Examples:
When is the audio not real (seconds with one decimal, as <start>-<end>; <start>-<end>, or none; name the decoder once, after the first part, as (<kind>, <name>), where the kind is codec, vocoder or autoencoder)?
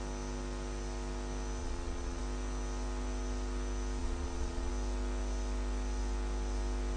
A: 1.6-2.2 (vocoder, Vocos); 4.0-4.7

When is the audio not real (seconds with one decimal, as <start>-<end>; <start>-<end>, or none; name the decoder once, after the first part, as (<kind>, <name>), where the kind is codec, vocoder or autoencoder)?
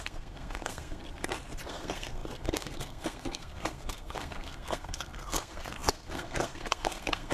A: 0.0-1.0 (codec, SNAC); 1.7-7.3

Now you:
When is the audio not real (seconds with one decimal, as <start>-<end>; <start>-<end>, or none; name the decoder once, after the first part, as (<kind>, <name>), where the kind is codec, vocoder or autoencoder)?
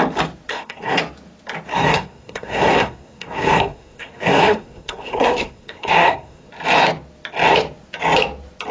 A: 0.5-1.0 (codec, SNAC); 1.7-6.5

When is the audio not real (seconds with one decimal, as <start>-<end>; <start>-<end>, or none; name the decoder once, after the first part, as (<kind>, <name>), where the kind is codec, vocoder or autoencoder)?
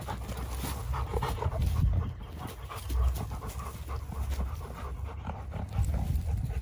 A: none